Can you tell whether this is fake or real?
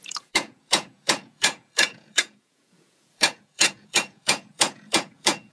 fake